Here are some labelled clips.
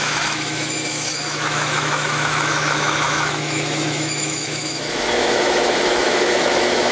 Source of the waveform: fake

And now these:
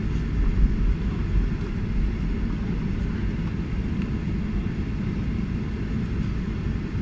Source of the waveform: real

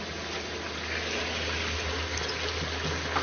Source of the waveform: real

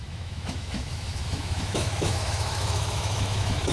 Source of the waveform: fake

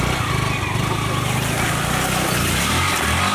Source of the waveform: real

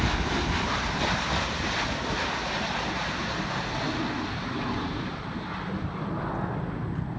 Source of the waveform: real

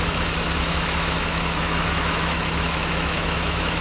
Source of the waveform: fake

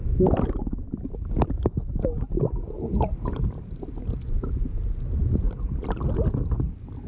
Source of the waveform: real